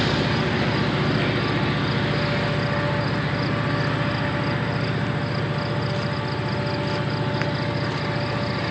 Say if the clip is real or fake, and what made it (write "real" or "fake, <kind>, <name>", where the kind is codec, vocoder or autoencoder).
real